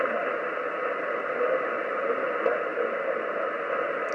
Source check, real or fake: real